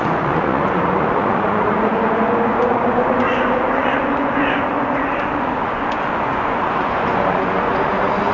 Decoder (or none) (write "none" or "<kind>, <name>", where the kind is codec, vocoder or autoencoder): vocoder, Vocos